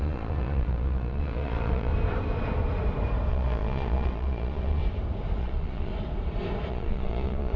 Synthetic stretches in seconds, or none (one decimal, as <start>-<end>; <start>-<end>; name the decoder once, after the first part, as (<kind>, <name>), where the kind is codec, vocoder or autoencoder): 0.0-1.9 (vocoder, Vocos); 3.3-4.8; 5.4-5.9; 6.7-7.6